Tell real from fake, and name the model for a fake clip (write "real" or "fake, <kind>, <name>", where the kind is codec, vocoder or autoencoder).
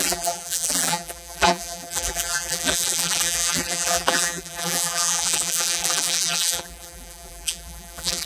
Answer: fake, vocoder, BigVGAN v2